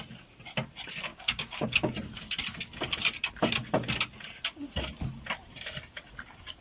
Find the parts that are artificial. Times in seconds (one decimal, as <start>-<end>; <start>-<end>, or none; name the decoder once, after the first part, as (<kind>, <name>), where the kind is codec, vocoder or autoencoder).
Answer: 1.1-1.9 (codec, DAC)